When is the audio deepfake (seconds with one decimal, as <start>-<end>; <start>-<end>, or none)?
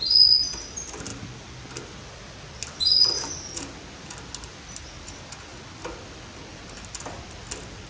none